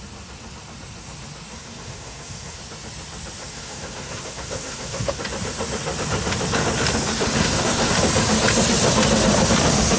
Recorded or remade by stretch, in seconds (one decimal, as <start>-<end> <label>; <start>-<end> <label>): 0.0-1.5 recorded; 1.5-2.6 remade; 2.6-3.4 recorded; 3.4-5.2 remade; 5.2-7.4 recorded; 7.4-7.9 remade; 7.9-10.0 recorded

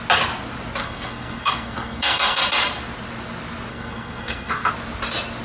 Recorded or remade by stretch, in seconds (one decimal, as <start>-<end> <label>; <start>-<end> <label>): 0.0-0.8 recorded; 0.8-2.4 remade; 2.4-3.7 recorded; 3.7-4.7 remade; 4.7-5.4 recorded

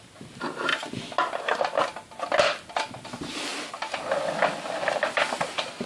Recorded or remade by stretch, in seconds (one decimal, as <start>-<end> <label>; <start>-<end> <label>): 0.0-5.9 recorded

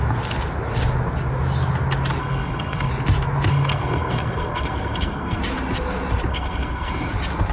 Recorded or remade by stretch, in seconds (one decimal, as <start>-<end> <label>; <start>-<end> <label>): 0.0-2.2 recorded; 2.2-2.9 remade; 2.9-3.5 recorded; 3.5-5.4 remade; 5.4-6.3 recorded; 6.3-7.1 remade; 7.1-7.5 recorded

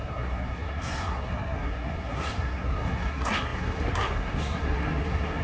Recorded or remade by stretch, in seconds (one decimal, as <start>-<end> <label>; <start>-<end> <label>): 0.0-5.4 remade

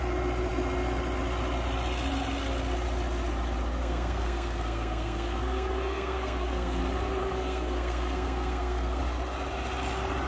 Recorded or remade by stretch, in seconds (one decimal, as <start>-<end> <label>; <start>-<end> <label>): 0.0-3.8 recorded; 3.8-6.8 remade; 6.8-7.2 recorded; 7.2-9.0 remade; 9.0-10.3 recorded

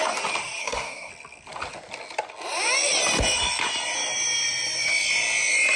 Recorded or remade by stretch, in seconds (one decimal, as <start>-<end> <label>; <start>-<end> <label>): 0.0-0.6 recorded; 0.6-1.1 remade; 1.1-5.8 recorded